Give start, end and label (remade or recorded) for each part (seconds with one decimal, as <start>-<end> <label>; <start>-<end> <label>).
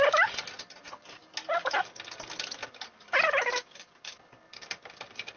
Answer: 0.0-5.4 recorded